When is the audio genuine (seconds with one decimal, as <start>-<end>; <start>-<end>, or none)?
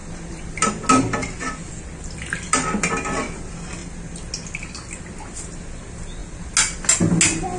0.0-7.6